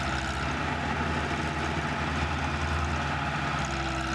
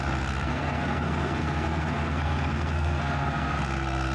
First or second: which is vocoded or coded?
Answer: second